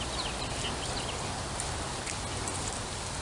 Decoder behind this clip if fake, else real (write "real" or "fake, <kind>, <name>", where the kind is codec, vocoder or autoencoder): real